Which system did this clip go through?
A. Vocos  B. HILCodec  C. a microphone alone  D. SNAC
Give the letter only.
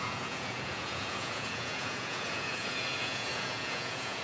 A